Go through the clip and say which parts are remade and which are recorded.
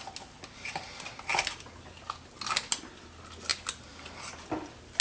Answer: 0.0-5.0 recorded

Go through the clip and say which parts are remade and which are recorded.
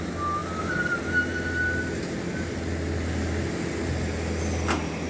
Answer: 0.0-5.1 recorded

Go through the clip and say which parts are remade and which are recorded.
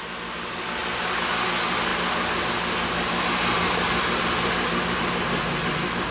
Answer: 0.0-6.1 recorded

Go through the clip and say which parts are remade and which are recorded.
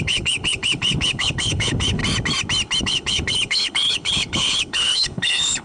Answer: 0.0-2.0 remade; 2.0-2.8 recorded; 2.8-5.6 remade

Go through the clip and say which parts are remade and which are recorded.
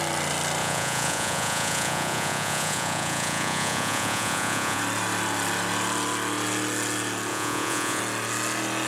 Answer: 0.0-0.6 recorded; 0.6-4.8 remade; 4.8-7.3 recorded; 7.3-8.0 remade; 8.0-8.9 recorded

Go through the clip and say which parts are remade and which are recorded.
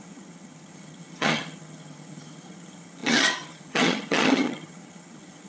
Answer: 0.0-5.5 remade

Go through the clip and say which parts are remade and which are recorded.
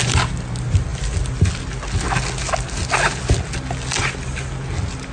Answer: 0.0-5.1 recorded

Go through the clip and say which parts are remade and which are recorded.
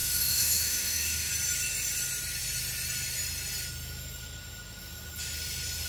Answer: 0.0-1.3 remade; 1.3-5.9 recorded